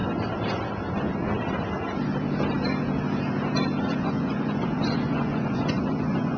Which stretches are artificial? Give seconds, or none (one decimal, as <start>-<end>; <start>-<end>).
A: 3.8-6.4